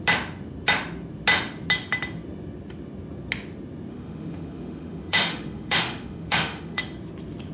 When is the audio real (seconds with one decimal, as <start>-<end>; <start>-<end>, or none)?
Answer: 0.0-3.9; 6.8-7.5